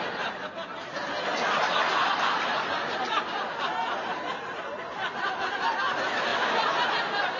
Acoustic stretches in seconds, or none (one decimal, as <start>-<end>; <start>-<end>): 0.0-7.4